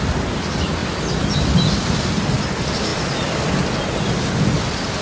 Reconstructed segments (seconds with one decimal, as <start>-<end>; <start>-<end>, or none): none